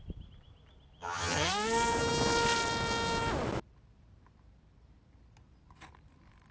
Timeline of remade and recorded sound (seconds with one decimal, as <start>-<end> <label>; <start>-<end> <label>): 0.0-1.0 recorded; 1.0-1.5 remade; 1.5-6.5 recorded